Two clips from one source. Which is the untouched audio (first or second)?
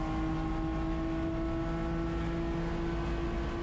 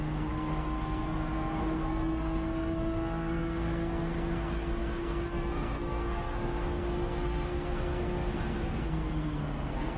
first